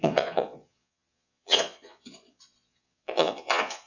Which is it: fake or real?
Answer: fake